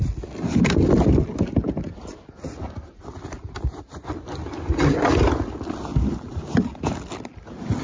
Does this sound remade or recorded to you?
recorded